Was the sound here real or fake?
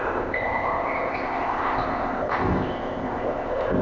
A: fake